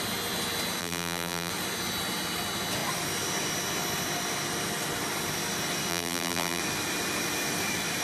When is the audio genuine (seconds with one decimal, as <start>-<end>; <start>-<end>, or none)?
0.0-0.8; 1.5-5.9; 6.6-8.0